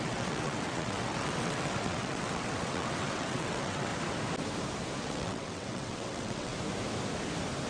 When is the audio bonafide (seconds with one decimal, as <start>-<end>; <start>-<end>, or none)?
3.9-5.0; 6.5-7.7